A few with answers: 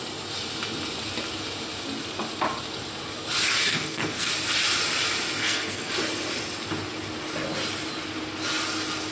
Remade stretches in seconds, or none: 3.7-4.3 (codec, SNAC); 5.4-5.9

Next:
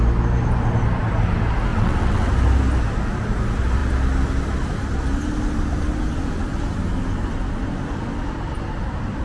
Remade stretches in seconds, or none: 1.7-2.3 (vocoder, WaveNeXt)

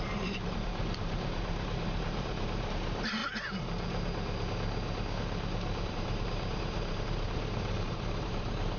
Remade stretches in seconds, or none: 0.0-3.2 (vocoder, BigVGAN v2); 5.9-8.8